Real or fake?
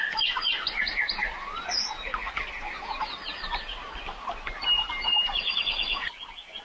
real